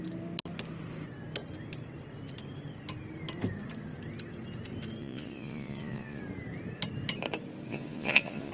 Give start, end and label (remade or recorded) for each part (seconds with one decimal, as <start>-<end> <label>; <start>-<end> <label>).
0.0-5.0 recorded; 5.0-6.2 remade; 6.2-7.7 recorded; 7.7-8.5 remade